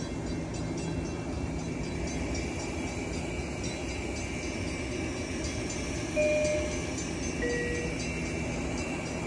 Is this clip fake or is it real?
real